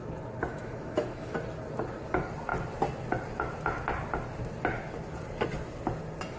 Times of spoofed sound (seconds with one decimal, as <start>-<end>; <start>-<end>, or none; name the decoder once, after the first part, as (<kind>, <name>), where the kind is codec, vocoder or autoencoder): 0.5-1.3 (autoencoder, DAC-VAE)